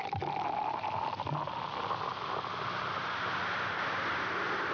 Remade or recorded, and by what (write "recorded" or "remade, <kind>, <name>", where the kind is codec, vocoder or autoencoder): recorded